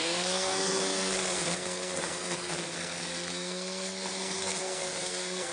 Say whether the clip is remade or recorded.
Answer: remade